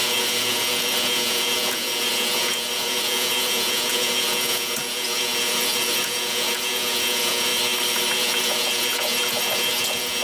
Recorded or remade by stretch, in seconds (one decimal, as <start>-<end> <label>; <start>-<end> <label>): 0.0-7.5 remade; 7.5-8.1 recorded; 8.1-10.2 remade